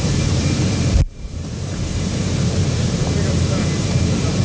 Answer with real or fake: fake